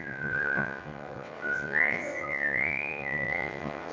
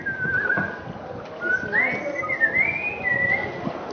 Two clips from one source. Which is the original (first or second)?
second